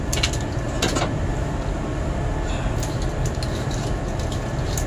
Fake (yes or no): no